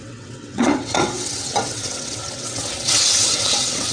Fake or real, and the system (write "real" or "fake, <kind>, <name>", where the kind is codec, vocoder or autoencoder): fake, vocoder, WaveNeXt